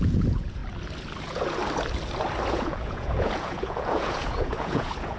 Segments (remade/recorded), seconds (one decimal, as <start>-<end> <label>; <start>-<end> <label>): 0.0-0.6 remade; 0.6-1.2 recorded; 1.2-1.6 remade; 1.6-2.5 recorded; 2.5-5.2 remade